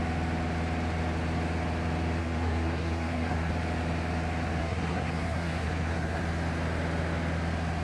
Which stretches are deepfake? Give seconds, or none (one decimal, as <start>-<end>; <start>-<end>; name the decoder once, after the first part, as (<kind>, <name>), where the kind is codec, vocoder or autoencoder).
2.2-3.5 (codec, SNAC); 4.6-6.2